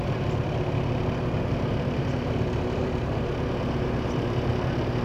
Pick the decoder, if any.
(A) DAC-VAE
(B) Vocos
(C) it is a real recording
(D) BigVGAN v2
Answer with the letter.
D